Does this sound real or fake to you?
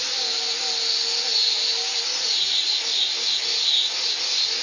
real